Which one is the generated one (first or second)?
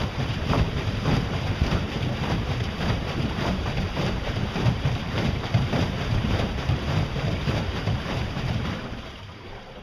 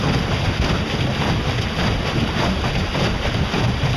first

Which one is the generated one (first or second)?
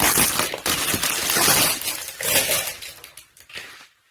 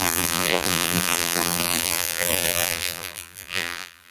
second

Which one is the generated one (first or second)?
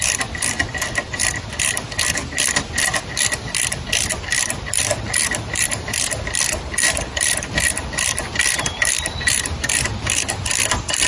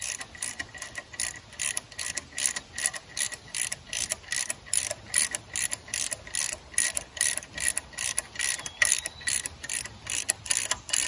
first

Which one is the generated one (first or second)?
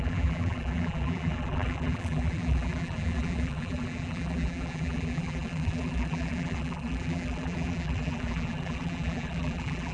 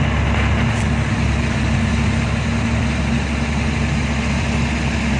first